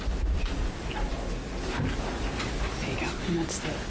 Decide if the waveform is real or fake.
real